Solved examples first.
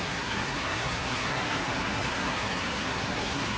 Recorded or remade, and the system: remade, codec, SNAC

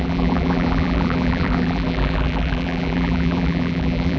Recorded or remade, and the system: remade, vocoder, BigVGAN v2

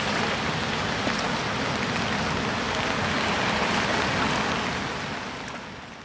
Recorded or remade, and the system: recorded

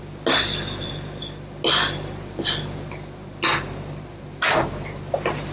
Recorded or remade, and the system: recorded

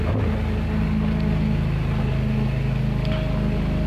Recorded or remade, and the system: recorded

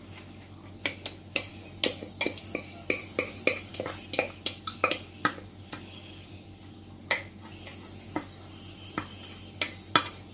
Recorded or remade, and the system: recorded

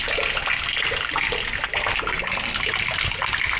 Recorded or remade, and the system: recorded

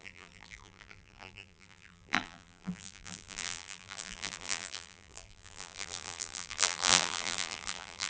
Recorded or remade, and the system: remade, vocoder, BigVGAN v2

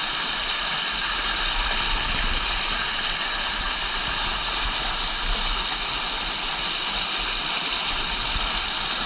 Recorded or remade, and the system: recorded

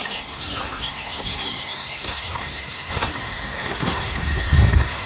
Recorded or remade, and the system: remade, codec, SNAC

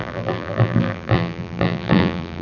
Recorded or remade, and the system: remade, vocoder, BigVGAN v2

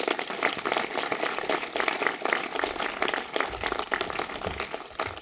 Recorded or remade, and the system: recorded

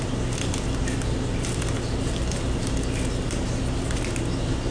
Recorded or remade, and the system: recorded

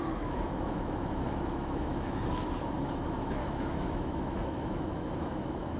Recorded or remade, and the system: remade, autoencoder, DAC-VAE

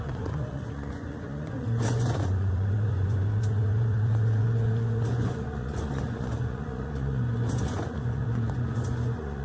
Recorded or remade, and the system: remade, vocoder, Vocos